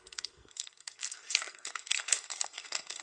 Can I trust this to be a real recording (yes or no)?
no